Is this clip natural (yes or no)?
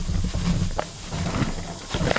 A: yes